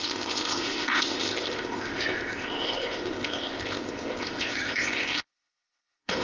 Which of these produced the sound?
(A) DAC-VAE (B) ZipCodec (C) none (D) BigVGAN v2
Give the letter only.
B